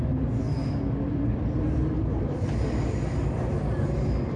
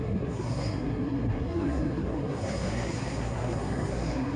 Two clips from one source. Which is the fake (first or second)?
second